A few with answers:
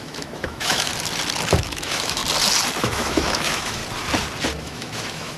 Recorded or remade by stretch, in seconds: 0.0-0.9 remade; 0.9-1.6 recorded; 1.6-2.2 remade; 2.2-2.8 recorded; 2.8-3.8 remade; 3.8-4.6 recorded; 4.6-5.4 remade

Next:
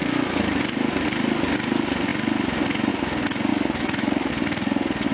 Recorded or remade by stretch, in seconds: 0.0-0.6 remade; 0.6-3.5 recorded; 3.5-4.3 remade; 4.3-5.1 recorded

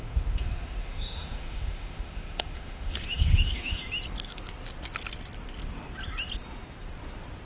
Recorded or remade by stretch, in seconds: 0.0-3.8 remade; 3.8-7.5 recorded

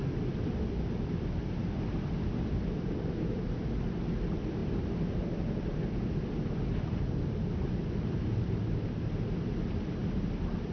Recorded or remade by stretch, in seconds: 0.0-10.7 recorded

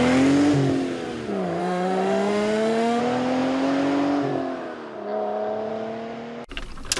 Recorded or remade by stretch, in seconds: 0.0-1.6 recorded; 1.6-3.0 remade; 3.0-7.0 recorded

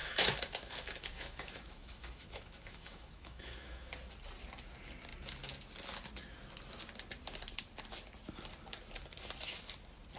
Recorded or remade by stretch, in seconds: 0.0-3.9 remade; 3.9-10.2 recorded

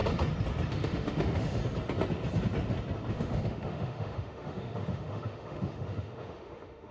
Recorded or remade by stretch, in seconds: 0.0-0.7 recorded; 0.7-1.6 remade; 1.6-3.1 recorded; 3.1-6.9 remade